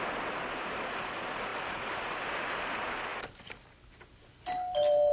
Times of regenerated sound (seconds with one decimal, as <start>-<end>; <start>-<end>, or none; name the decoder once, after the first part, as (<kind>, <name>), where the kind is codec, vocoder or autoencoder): none